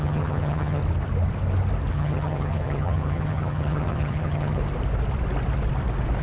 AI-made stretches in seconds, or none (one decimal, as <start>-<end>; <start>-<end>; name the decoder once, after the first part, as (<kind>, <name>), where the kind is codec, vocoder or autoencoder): 0.0-0.8 (vocoder, HiFi-GAN); 1.9-4.6